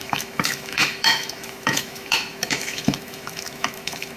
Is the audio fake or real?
fake